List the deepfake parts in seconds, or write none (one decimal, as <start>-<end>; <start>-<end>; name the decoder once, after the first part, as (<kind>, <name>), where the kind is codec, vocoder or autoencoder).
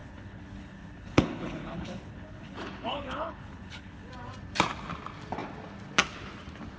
0.0-4.1 (codec, HILCodec)